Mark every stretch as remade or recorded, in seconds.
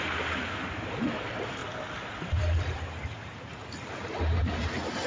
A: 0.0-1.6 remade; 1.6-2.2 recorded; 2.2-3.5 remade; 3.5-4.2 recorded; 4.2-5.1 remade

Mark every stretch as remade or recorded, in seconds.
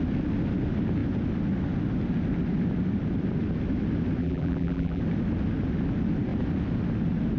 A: 0.0-4.2 recorded; 4.2-5.0 remade; 5.0-7.4 recorded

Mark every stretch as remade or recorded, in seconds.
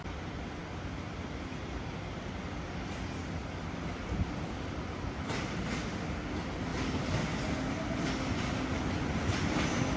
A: 0.0-3.2 recorded; 3.2-5.6 remade; 5.6-10.0 recorded